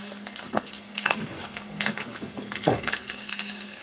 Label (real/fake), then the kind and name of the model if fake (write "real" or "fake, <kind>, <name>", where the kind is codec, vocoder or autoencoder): fake, codec, SNAC